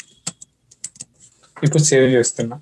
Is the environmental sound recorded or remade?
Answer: remade